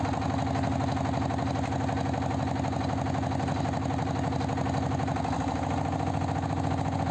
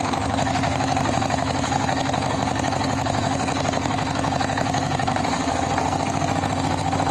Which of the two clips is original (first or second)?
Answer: first